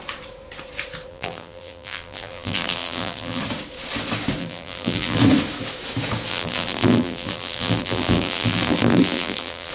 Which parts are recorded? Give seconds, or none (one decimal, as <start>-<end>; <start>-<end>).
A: 0.0-1.1; 3.4-4.4; 5.2-6.3